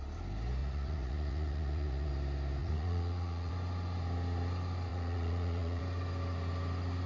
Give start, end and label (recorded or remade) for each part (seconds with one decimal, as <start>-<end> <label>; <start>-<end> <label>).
0.0-0.6 recorded; 0.6-2.1 remade; 2.1-2.6 recorded; 2.6-3.5 remade; 3.5-4.9 recorded; 4.9-5.8 remade; 5.8-7.1 recorded